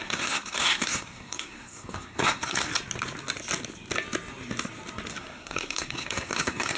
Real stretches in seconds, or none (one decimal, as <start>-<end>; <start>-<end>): 2.7-5.1